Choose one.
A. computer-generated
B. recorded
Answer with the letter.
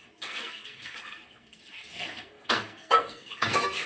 A